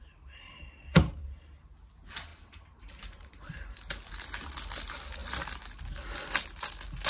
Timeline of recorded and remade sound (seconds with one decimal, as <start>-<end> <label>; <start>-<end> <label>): 0.0-2.3 recorded; 2.3-4.1 remade; 4.1-7.1 recorded